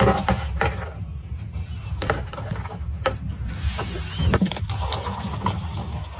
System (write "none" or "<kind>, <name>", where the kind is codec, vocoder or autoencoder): none